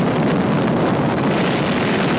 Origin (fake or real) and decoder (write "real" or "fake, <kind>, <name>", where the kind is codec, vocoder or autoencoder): real